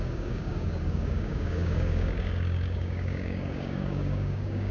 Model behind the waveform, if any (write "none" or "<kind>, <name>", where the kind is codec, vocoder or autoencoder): codec, DAC